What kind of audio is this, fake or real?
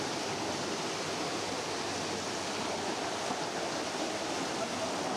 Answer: real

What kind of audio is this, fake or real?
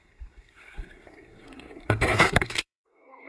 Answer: fake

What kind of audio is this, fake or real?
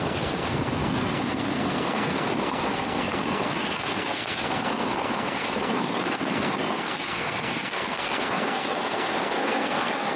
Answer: fake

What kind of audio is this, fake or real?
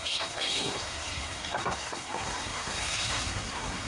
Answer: fake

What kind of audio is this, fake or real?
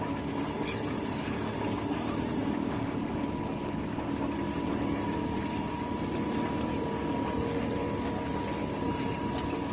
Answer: real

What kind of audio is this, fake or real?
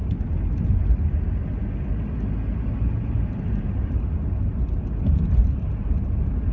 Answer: real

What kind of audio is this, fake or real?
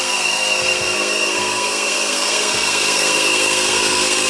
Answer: fake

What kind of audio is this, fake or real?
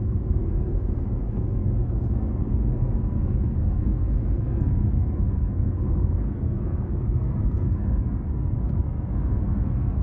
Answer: fake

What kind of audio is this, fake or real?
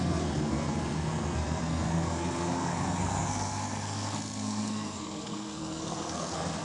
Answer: fake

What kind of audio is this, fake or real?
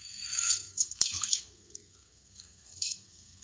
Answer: fake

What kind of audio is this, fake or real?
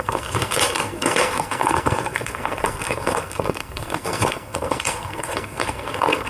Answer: fake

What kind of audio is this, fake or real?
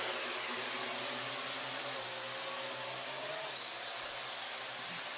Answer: real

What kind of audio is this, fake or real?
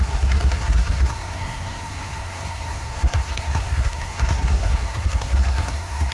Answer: fake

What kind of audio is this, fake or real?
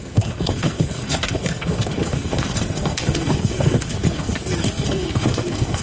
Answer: fake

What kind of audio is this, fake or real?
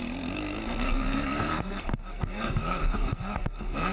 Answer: fake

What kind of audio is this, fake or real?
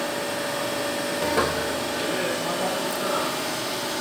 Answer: real